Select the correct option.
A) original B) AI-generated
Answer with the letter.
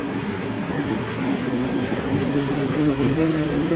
B